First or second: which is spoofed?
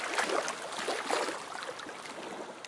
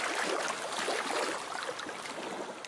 second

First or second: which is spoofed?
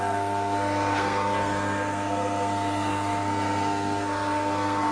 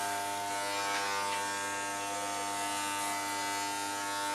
first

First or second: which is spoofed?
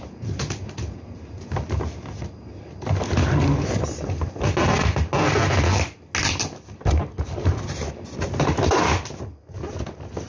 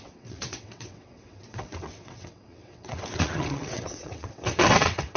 second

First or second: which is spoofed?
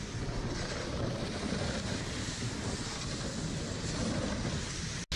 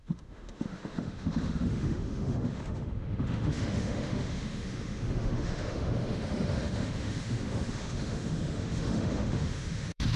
second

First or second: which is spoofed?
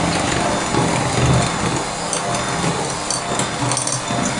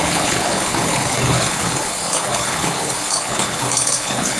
second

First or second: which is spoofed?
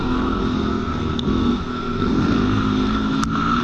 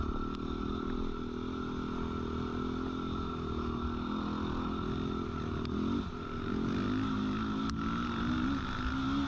first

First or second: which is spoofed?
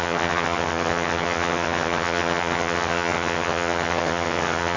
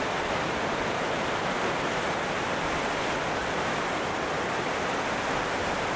first